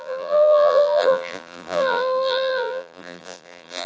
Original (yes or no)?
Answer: no